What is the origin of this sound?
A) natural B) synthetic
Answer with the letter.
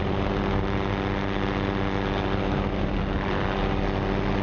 A